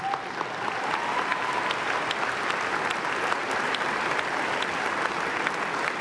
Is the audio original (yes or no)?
yes